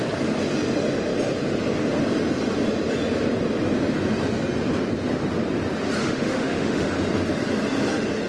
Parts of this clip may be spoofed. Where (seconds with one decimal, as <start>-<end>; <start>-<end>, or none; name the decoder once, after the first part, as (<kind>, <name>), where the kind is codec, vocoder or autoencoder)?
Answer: 6.0-6.9 (autoencoder, DAC-VAE)